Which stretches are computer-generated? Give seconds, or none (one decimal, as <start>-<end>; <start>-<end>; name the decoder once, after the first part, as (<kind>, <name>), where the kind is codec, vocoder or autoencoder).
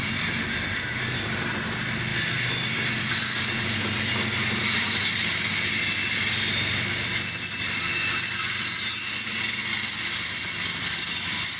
none